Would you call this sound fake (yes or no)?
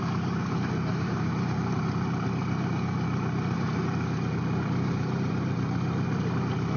yes